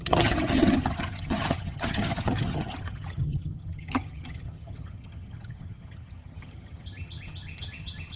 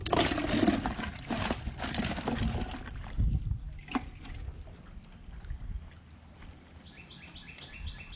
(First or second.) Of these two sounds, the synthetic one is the first